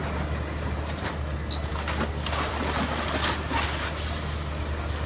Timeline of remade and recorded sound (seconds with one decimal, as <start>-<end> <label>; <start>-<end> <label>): 0.0-5.1 recorded